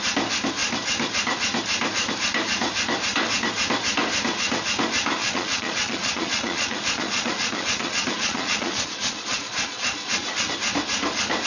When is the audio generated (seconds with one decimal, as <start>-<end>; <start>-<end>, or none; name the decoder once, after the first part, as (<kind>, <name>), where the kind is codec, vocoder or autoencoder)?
5.2-10.5 (vocoder, Vocos)